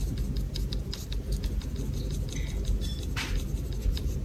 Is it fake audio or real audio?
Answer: real